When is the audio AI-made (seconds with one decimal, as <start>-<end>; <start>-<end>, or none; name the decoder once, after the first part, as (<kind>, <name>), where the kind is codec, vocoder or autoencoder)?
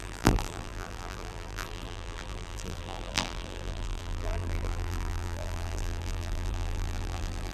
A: 0.0-7.5 (vocoder, BigVGAN v2)